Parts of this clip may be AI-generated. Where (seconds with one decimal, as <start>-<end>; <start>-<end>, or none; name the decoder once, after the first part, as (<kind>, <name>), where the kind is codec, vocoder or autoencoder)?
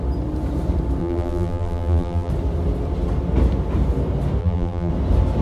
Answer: 1.0-2.3 (vocoder, BigVGAN v2); 4.4-4.9